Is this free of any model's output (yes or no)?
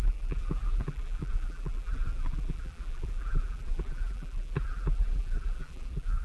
no